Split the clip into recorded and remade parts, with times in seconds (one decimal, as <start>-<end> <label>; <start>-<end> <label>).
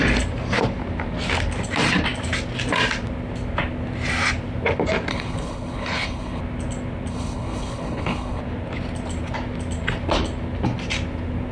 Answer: 0.0-5.1 recorded; 5.1-6.4 remade; 6.4-7.1 recorded; 7.1-8.4 remade; 8.4-11.5 recorded